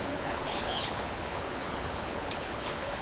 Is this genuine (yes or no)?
no